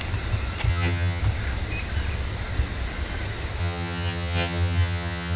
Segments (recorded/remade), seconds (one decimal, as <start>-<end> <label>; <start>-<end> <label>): 0.0-0.7 recorded; 0.7-1.2 remade; 1.2-3.6 recorded; 3.6-5.4 remade